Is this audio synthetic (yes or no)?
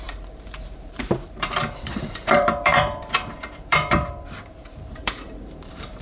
yes